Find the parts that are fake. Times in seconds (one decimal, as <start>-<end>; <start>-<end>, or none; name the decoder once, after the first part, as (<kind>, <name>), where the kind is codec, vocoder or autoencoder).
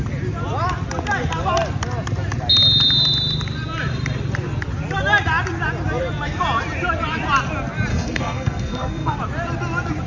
7.9-9.2 (codec, SNAC)